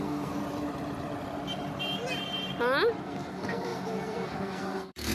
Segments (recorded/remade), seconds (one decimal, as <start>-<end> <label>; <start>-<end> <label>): 0.0-0.4 remade; 0.4-3.0 recorded; 3.0-5.1 remade